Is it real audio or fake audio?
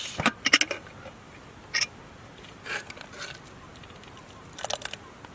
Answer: real